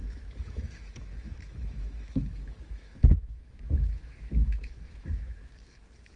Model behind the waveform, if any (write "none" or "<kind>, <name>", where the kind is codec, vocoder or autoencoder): autoencoder, DAC-VAE